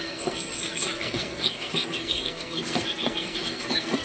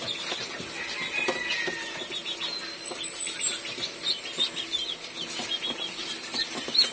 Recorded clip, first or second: second